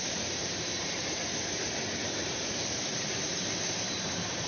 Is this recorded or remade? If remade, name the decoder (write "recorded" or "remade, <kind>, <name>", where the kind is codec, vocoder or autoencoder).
remade, vocoder, BigVGAN v2